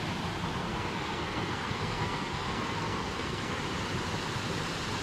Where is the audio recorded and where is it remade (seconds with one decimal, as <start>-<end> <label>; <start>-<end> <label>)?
0.0-0.6 recorded; 0.6-3.6 remade; 3.6-5.0 recorded